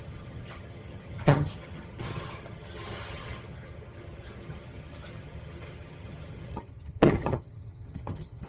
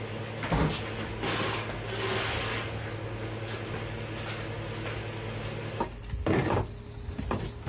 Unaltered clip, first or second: second